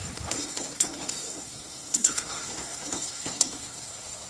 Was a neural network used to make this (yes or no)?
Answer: yes